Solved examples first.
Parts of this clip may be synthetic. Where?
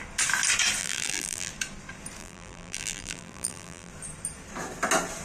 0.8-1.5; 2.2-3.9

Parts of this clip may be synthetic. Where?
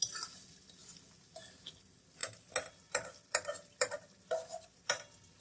none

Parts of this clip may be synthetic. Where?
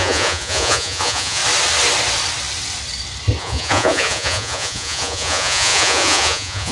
0.0-1.4; 3.4-6.7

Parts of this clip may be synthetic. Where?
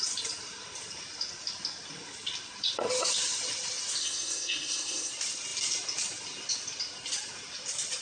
4.0-5.1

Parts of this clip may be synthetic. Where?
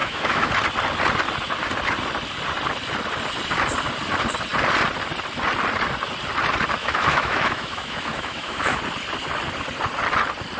0.0-0.5; 6.8-8.8